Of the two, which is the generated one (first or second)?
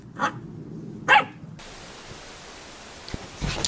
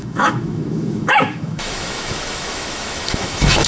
second